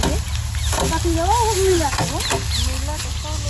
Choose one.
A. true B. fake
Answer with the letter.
A